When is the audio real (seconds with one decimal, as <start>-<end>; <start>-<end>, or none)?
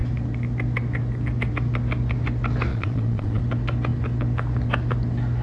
0.0-2.7; 3.4-5.4